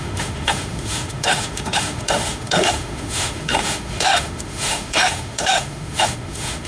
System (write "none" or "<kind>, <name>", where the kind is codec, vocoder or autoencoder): autoencoder, DAC-VAE